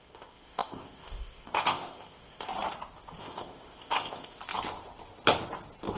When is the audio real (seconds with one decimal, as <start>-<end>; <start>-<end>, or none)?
2.5-3.2; 4.4-6.0